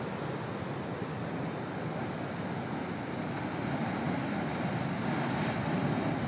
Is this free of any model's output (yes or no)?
yes